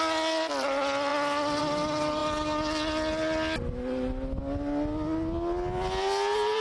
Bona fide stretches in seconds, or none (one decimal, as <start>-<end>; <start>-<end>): 0.0-6.6